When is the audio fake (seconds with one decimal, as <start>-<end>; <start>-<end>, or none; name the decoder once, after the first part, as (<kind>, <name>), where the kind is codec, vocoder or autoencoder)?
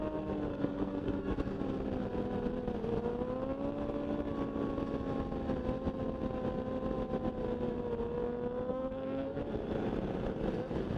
0.5-1.6 (codec, SNAC); 8.7-9.4